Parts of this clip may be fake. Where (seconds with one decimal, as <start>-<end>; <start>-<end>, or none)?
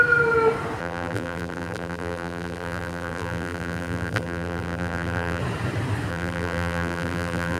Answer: 0.8-5.4; 6.1-7.6